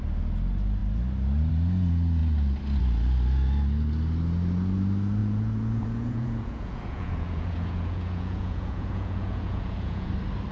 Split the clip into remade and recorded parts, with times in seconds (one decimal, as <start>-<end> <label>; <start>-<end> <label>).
0.0-5.2 recorded; 5.2-10.1 remade; 10.1-10.5 recorded

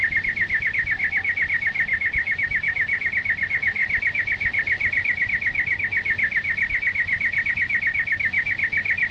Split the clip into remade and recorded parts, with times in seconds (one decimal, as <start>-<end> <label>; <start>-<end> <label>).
0.0-2.2 recorded; 2.2-3.1 remade; 3.1-9.1 recorded

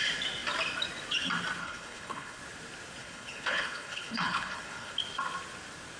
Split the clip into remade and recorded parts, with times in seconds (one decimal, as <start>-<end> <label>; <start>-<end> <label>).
0.0-1.6 recorded; 1.6-2.4 remade; 2.4-3.0 recorded; 3.0-4.9 remade; 4.9-6.0 recorded

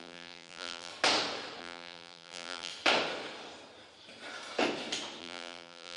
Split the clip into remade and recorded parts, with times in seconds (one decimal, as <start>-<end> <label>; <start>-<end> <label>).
0.0-0.9 remade; 0.9-1.6 recorded; 1.6-2.7 remade; 2.7-5.2 recorded; 5.2-6.0 remade

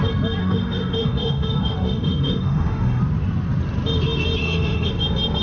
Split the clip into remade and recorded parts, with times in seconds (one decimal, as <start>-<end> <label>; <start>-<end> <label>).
0.0-0.4 recorded; 0.4-3.0 remade; 3.0-4.4 recorded; 4.4-4.9 remade; 4.9-5.4 recorded

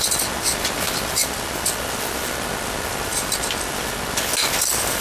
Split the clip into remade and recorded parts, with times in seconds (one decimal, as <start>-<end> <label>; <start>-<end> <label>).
0.0-3.1 recorded; 3.1-3.7 remade; 3.7-5.0 recorded